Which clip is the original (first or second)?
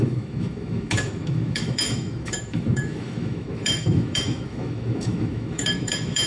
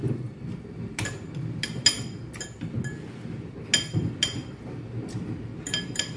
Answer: second